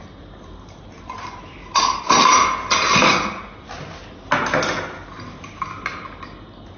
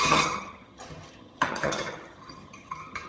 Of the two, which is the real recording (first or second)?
first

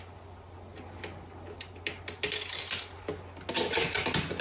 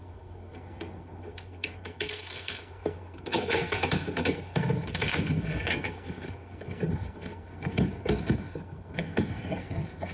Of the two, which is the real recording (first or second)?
first